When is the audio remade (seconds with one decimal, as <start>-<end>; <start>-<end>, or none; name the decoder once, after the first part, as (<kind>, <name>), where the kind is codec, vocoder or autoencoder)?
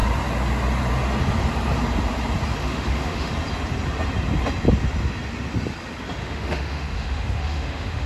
2.6-3.3 (autoencoder, DAC-VAE); 6.2-8.1